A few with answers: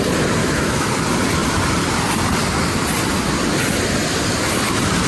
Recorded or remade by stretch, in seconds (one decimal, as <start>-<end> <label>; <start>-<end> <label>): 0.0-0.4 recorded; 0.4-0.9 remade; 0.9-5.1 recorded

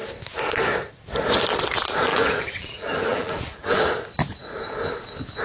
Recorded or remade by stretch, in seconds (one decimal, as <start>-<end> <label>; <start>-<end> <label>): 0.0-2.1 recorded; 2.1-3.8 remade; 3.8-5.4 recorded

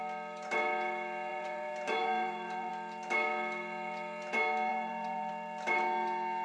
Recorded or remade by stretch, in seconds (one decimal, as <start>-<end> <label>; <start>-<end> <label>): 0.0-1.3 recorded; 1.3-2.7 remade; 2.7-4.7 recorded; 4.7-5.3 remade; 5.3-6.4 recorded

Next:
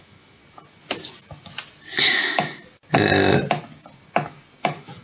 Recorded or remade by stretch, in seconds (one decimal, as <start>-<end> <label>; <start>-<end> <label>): 0.0-0.4 remade; 0.4-2.0 recorded; 2.0-2.6 remade; 2.6-4.6 recorded; 4.6-5.0 remade